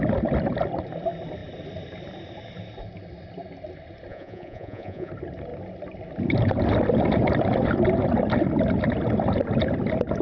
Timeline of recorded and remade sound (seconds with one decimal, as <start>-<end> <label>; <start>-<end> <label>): 0.0-4.1 recorded; 4.1-5.1 remade; 5.1-10.2 recorded